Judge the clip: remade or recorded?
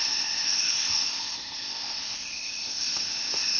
remade